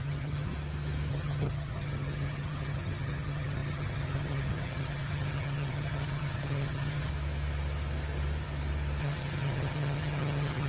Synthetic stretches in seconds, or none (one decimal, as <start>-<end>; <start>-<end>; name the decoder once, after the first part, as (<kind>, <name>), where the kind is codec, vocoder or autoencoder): 0.0-0.5 (vocoder, HiFi-GAN); 1.1-7.1; 9.0-10.7